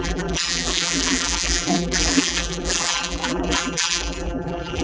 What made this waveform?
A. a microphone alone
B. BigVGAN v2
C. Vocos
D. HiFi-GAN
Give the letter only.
B